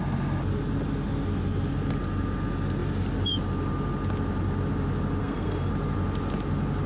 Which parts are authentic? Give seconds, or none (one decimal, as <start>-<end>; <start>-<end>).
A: 0.0-5.2; 5.7-6.9